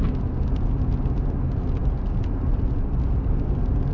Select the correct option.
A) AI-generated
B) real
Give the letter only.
B